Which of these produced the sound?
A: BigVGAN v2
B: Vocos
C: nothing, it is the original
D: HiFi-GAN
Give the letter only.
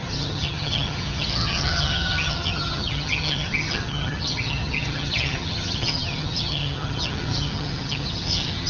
D